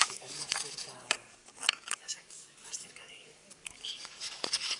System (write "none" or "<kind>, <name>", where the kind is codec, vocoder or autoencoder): codec, DAC